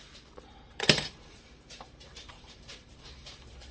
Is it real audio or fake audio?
fake